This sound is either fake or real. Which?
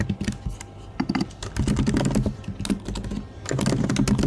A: real